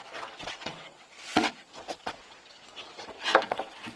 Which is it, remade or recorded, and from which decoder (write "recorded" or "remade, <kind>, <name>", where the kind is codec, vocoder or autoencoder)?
remade, vocoder, WaveNeXt